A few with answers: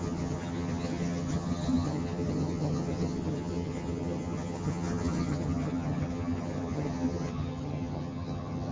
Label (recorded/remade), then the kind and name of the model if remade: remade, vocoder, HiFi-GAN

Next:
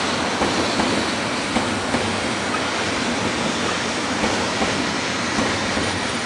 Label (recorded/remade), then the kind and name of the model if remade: recorded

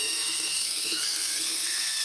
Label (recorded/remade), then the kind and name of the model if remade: remade, codec, SNAC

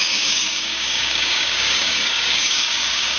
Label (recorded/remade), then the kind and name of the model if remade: remade, codec, DAC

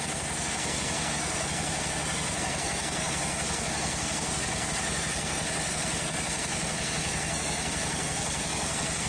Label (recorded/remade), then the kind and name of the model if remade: remade, codec, SNAC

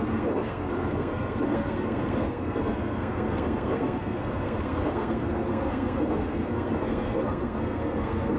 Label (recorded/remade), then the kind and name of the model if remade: remade, codec, SNAC